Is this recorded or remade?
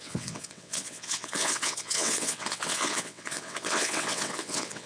remade